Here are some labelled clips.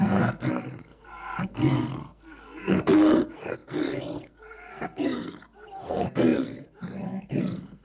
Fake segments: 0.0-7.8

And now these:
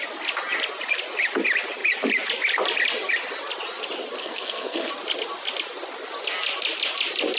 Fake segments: 4.2-4.9

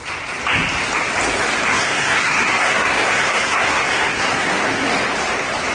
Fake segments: 1.7-4.9